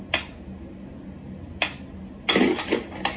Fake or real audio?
real